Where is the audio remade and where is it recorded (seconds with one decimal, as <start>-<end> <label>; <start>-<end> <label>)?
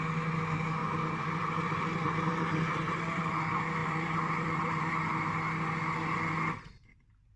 0.0-0.8 recorded; 0.8-3.3 remade; 3.3-3.8 recorded; 3.8-5.1 remade; 5.1-7.4 recorded